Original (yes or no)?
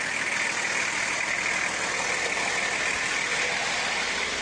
yes